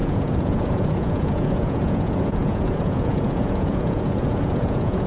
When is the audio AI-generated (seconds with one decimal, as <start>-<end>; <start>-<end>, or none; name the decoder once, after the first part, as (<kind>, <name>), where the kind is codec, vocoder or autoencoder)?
0.0-5.1 (vocoder, Vocos)